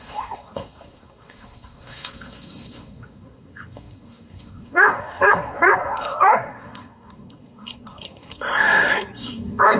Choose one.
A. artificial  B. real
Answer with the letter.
A